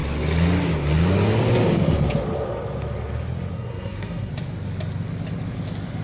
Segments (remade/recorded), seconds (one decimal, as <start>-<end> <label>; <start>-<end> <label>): 0.0-3.5 recorded; 3.5-4.3 remade; 4.3-6.0 recorded